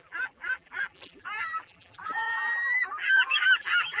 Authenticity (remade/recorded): remade